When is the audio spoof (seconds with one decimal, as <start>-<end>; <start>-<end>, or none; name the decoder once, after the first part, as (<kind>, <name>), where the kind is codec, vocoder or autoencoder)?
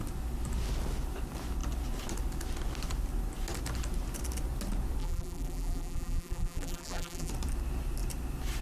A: 5.0-7.3 (vocoder, BigVGAN v2)